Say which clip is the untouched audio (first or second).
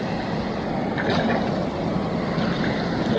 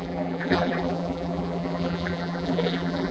first